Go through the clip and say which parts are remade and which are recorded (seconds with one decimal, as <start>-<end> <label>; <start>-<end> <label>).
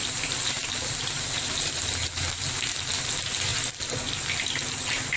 0.0-5.2 recorded